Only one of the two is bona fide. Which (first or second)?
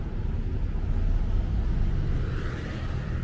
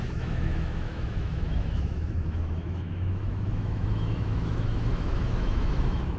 first